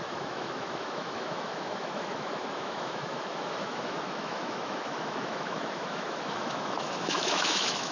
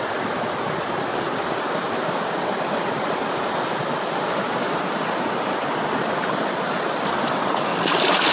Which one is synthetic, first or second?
first